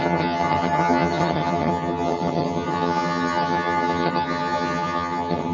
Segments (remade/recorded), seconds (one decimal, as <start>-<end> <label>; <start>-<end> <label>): 0.0-5.5 remade